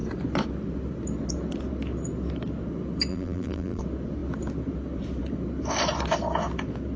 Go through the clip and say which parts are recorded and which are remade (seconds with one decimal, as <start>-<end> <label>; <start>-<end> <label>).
0.0-3.1 recorded; 3.1-3.8 remade; 3.8-7.0 recorded

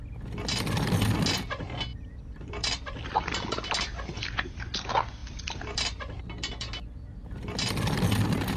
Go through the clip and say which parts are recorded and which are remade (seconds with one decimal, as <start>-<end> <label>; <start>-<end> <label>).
0.0-1.9 recorded; 1.9-4.6 remade; 4.6-5.2 recorded; 5.2-6.2 remade; 6.2-8.6 recorded

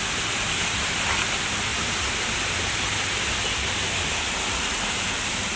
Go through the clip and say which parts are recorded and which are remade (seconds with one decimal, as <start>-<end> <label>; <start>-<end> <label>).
0.0-5.6 remade

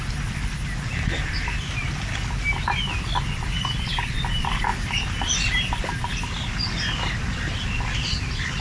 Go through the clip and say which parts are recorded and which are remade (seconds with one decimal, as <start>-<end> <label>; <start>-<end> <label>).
0.0-4.7 recorded; 4.7-5.3 remade; 5.3-8.6 recorded

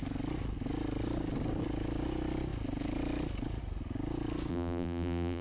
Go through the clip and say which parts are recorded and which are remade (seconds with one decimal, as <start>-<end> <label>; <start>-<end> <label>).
0.0-4.5 recorded; 4.5-5.4 remade

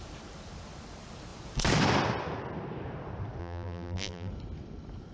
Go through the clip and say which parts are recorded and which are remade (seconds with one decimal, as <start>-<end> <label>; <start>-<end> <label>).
0.0-3.4 recorded; 3.4-4.3 remade; 4.3-5.1 recorded